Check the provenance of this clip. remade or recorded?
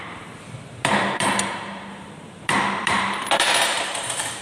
remade